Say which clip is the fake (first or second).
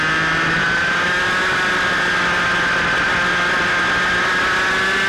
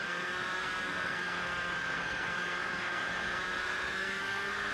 second